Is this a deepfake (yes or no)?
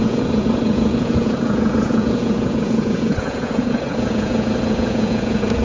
yes